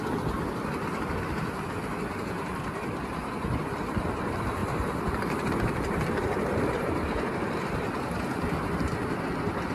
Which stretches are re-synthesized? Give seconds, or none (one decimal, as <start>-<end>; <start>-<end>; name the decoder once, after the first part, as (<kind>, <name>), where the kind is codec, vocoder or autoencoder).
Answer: 4.6-9.2 (vocoder, BigVGAN v2)